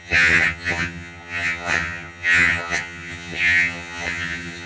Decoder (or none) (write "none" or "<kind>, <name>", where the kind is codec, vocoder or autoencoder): vocoder, HiFi-GAN